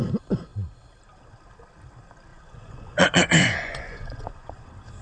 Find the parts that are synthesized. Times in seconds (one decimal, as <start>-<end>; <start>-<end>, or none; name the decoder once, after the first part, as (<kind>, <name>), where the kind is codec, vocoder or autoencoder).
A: 2.3-4.6 (vocoder, Vocos)